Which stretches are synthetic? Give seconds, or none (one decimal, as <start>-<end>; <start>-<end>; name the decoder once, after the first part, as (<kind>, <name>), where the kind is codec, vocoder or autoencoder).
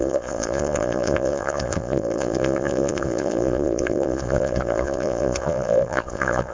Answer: 0.0-6.5 (vocoder, Vocos)